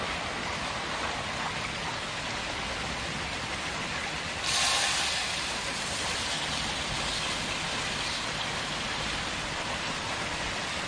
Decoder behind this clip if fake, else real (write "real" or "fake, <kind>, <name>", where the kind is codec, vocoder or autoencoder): real